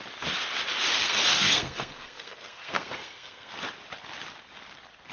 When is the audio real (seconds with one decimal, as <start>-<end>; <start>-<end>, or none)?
0.0-1.0; 3.5-5.1